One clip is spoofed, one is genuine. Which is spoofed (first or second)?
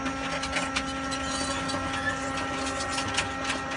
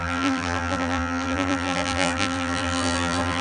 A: second